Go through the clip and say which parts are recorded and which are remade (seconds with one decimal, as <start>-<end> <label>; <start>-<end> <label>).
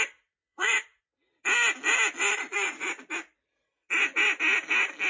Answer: 0.0-0.4 recorded; 0.4-1.0 remade; 1.0-2.4 recorded; 2.4-2.9 remade; 2.9-5.1 recorded